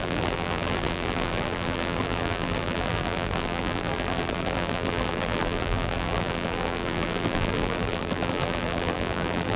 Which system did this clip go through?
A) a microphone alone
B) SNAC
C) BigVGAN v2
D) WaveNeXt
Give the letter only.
C